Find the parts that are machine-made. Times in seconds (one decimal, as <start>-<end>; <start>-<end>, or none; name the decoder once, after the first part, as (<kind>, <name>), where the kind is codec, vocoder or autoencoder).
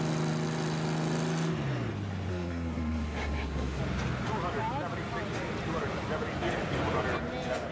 2.3-3.8 (codec, SNAC)